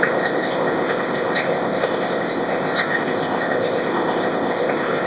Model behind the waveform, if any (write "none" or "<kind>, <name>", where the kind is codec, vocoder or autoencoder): codec, ZipCodec